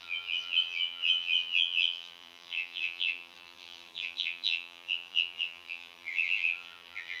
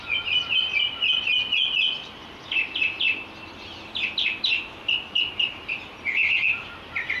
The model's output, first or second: first